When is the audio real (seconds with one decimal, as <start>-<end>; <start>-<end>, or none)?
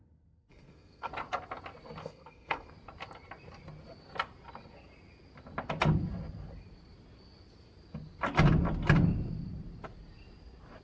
0.0-0.5; 1.1-2.0; 2.7-10.8